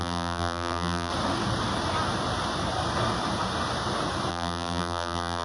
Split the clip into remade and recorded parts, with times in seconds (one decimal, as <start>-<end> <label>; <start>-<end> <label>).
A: 0.0-1.1 remade; 1.1-4.3 recorded; 4.3-5.4 remade